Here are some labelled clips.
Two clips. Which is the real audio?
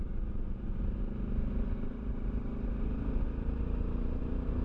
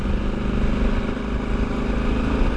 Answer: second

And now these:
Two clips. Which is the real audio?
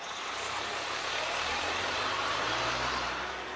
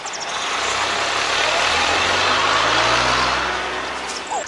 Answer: second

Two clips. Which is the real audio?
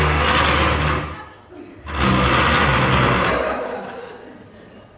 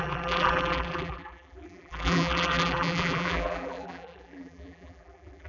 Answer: first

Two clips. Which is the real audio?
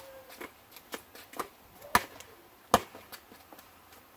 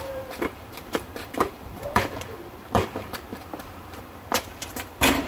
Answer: first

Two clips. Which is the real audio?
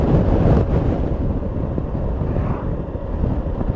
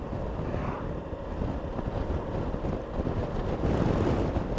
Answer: second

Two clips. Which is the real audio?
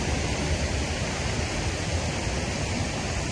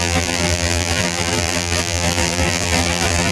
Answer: first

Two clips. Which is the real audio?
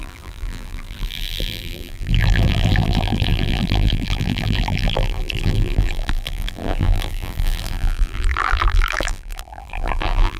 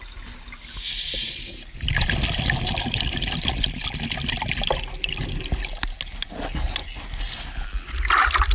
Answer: second